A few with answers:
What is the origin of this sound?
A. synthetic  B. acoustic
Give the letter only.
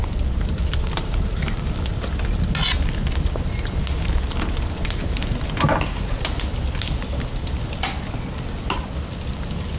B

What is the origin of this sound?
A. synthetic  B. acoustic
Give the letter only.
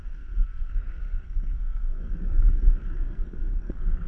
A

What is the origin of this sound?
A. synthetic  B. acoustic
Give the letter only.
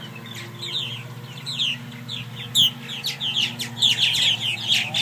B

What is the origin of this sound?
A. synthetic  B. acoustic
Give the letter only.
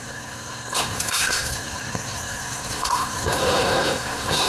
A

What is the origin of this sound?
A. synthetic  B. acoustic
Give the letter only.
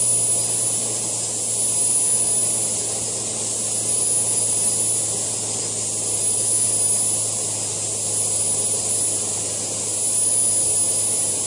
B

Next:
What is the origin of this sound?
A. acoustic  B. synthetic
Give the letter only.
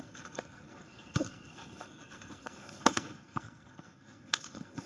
B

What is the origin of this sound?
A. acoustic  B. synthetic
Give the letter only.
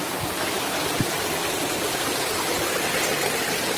A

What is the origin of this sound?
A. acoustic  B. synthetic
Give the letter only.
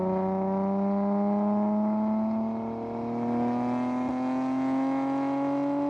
A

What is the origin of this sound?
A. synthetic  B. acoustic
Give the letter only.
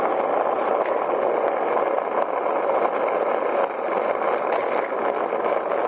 B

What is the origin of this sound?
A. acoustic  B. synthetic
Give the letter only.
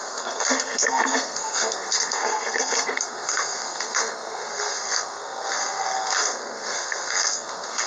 B